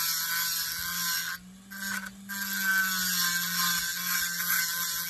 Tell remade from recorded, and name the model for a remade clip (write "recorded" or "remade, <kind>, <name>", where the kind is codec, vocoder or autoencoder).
recorded